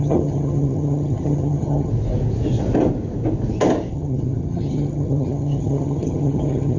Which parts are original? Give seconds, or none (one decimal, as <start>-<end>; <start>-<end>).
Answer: 1.9-3.9